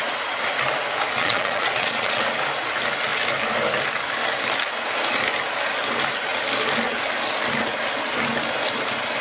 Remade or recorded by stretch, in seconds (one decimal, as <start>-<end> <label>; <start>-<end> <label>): 0.0-1.2 recorded; 1.2-2.2 remade; 2.2-9.2 recorded